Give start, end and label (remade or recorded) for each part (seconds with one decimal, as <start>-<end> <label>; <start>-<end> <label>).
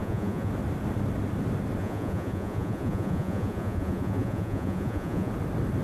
0.0-0.5 remade; 0.5-1.8 recorded; 1.8-5.3 remade; 5.3-5.8 recorded